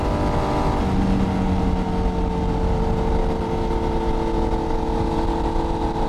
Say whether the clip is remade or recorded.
recorded